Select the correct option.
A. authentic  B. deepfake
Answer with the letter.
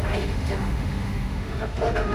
B